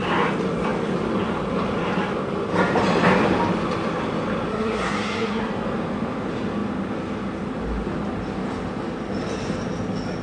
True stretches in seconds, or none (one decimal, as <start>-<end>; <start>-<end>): 0.0-4.5; 5.5-10.2